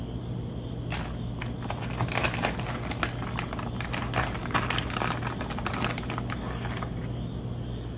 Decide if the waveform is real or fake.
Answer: real